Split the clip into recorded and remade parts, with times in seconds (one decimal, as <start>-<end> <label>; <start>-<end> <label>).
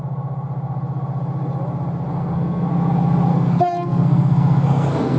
0.0-2.1 recorded; 2.1-2.7 remade; 2.7-3.3 recorded; 3.3-5.2 remade